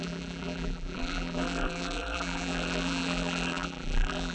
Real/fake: fake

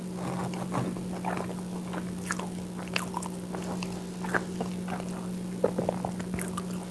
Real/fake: real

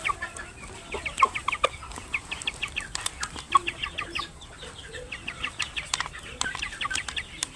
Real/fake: real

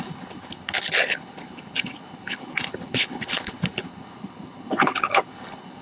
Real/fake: fake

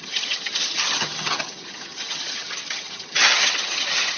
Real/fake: fake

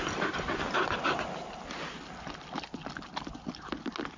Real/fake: real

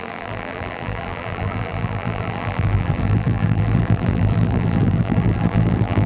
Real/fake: fake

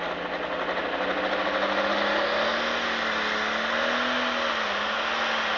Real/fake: real